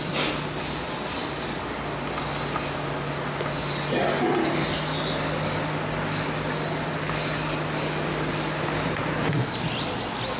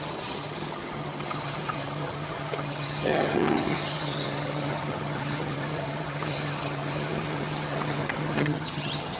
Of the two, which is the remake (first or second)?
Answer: second